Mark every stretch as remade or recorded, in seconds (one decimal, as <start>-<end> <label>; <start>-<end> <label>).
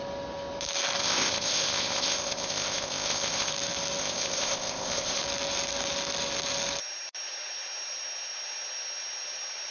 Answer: 0.0-1.0 recorded; 1.0-3.5 remade; 3.5-4.0 recorded; 4.0-5.2 remade; 5.2-9.7 recorded